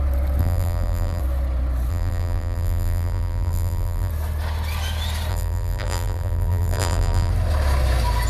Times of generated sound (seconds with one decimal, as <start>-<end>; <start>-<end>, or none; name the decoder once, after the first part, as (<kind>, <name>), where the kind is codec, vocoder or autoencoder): 0.4-1.2 (vocoder, BigVGAN v2); 1.9-4.1; 5.3-7.3